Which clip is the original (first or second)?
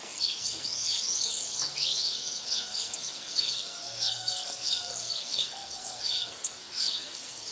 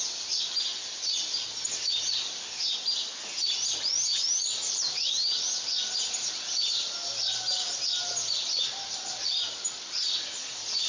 second